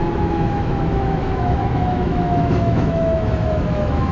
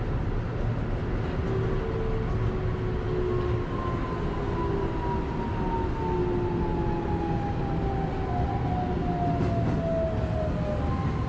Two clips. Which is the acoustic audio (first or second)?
second